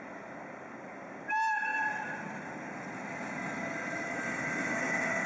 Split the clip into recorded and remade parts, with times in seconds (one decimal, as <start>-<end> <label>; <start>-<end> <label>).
0.0-5.3 recorded